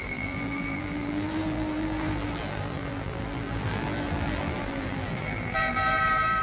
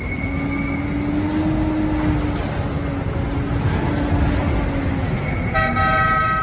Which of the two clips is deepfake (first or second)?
first